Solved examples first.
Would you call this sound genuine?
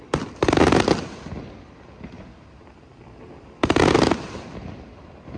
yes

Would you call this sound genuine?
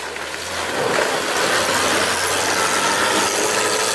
yes